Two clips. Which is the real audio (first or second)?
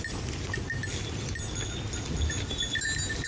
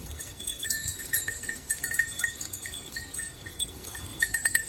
first